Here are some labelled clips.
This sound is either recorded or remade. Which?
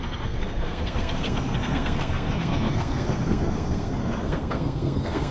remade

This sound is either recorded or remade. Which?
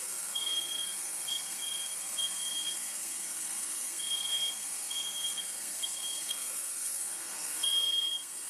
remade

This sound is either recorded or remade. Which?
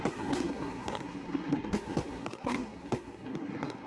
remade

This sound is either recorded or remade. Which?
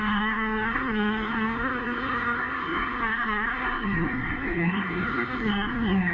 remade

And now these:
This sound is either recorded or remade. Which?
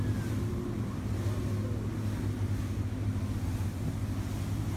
recorded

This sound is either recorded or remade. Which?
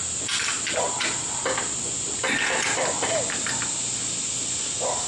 recorded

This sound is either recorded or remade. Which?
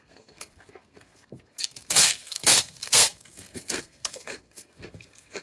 remade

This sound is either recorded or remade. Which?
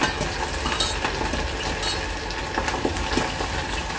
recorded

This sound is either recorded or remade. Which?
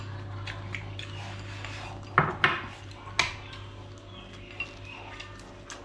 recorded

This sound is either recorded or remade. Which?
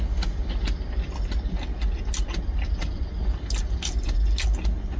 recorded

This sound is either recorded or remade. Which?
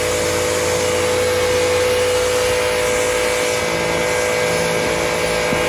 recorded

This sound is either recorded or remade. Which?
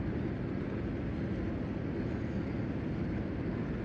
recorded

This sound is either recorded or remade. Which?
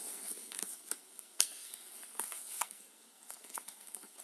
remade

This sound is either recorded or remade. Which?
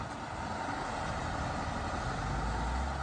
recorded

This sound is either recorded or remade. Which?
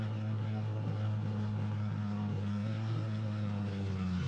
remade